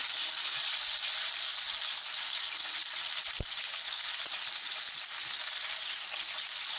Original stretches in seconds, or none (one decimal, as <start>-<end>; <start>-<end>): 0.0-6.8